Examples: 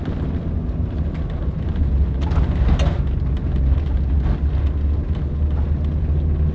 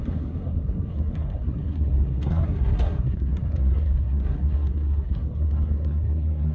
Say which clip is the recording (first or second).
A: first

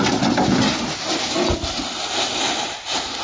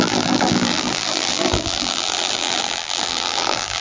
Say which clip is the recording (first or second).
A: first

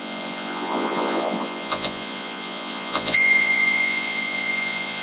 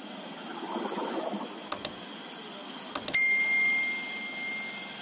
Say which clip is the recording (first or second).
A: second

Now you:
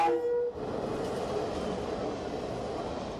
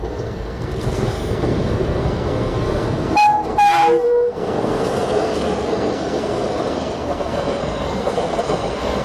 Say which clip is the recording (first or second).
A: first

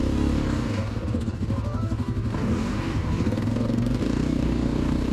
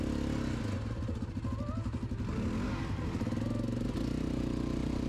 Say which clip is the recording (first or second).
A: second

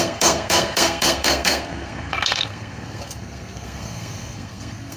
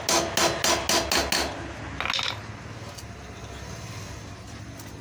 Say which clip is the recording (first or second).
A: second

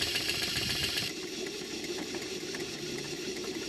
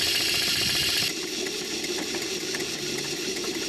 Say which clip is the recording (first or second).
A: second